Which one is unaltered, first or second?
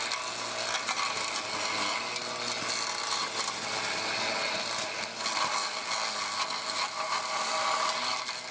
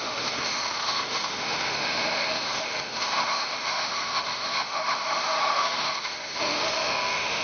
first